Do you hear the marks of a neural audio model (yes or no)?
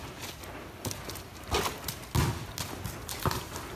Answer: no